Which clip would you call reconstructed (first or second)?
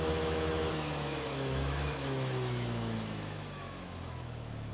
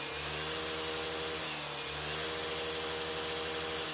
first